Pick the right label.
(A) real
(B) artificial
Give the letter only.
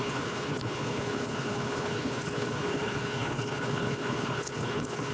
B